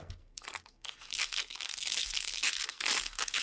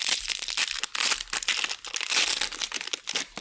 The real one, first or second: second